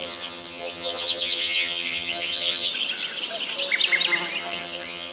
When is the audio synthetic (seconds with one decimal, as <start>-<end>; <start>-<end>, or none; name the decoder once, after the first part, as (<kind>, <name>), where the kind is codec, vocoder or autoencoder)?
0.0-2.7 (vocoder, HiFi-GAN); 4.4-5.1